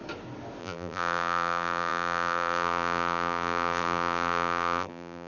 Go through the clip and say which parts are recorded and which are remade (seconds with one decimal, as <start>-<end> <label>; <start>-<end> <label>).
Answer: 0.0-0.6 recorded; 0.6-5.3 remade